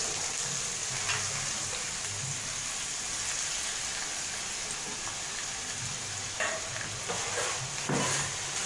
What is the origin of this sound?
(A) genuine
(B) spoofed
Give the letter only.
A